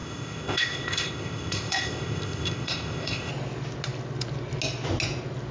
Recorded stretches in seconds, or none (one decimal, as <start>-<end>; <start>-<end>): 3.3-5.5